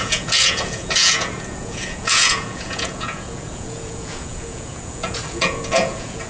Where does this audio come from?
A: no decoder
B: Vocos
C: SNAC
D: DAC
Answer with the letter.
B